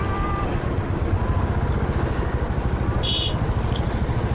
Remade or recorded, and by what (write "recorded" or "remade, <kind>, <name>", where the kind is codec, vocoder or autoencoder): recorded